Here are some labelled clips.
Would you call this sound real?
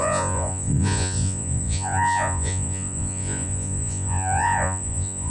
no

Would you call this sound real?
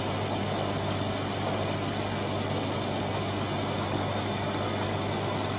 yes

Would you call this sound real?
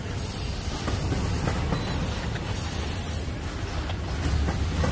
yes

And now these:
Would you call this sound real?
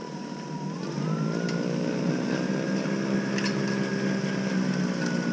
yes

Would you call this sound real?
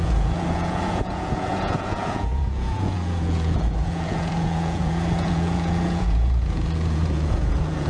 no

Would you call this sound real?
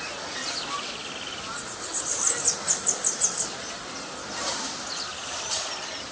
yes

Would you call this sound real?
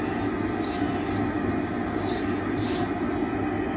yes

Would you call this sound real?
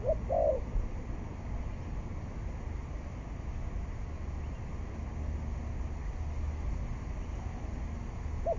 yes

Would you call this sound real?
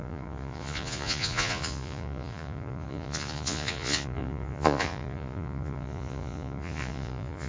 no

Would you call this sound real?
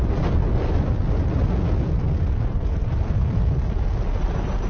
yes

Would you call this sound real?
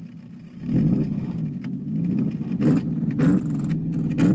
yes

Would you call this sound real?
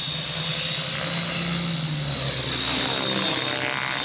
yes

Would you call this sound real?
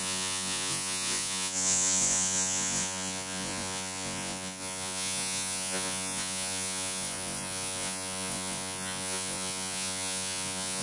no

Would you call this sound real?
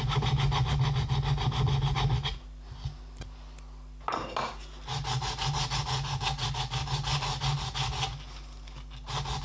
yes